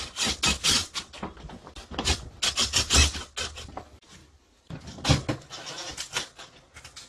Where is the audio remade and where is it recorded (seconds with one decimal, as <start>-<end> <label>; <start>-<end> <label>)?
0.0-7.1 recorded